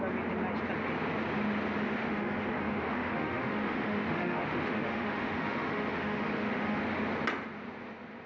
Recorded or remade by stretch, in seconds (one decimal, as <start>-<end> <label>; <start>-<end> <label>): 0.0-1.8 recorded; 1.8-6.8 remade; 6.8-8.3 recorded